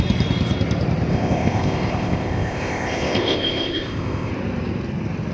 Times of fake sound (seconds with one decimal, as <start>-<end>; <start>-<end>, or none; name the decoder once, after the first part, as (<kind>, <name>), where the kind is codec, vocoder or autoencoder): 1.1-4.3 (codec, ZipCodec)